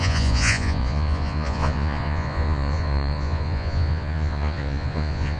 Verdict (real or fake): fake